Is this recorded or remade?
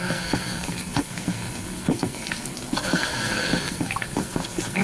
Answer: remade